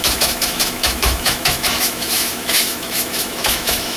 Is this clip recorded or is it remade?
remade